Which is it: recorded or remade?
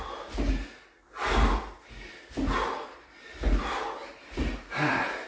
recorded